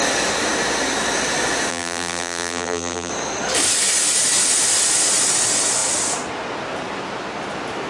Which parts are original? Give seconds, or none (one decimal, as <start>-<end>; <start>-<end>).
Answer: 0.0-1.7; 3.1-7.9